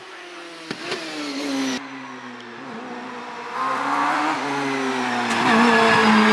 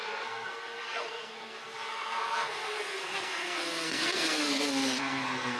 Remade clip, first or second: second